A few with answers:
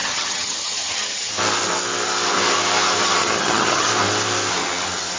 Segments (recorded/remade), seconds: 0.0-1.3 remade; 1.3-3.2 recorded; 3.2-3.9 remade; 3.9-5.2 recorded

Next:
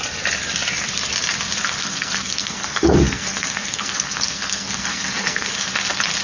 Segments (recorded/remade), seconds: 0.0-1.8 recorded; 1.8-5.5 remade; 5.5-6.2 recorded